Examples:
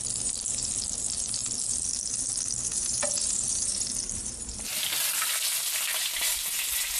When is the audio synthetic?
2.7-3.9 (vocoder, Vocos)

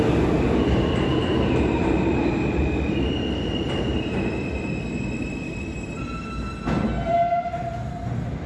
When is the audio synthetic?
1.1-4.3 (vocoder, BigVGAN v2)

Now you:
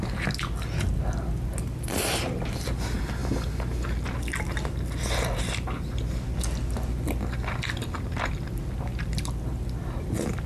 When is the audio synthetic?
8.9-9.4 (vocoder, BigVGAN v2)